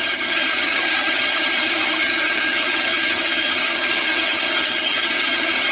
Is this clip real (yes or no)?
no